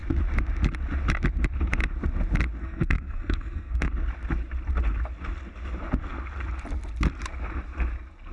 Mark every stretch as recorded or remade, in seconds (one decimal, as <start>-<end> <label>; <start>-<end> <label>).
0.0-2.6 recorded; 2.6-3.9 remade; 3.9-8.3 recorded